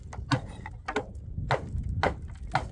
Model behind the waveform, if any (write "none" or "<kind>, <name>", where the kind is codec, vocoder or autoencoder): none